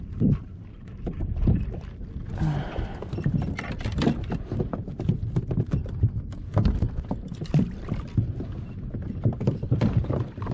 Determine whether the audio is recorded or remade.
recorded